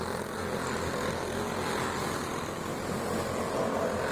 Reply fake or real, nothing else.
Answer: real